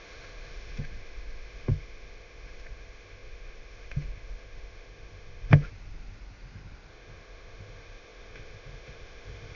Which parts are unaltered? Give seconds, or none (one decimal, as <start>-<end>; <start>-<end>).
5.7-6.9